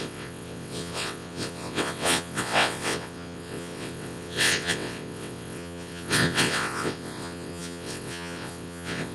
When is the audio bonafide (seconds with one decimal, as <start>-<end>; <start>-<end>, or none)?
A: none